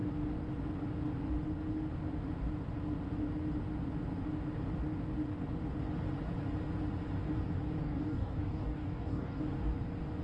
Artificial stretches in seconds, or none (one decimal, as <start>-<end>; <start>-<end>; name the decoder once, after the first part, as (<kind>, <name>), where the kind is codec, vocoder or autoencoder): 7.8-9.4 (codec, DAC)